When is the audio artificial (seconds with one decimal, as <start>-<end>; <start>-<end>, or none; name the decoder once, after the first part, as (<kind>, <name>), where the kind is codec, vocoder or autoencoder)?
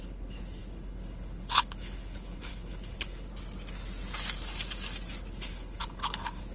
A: 0.0-3.3 (codec, HILCodec); 5.3-6.5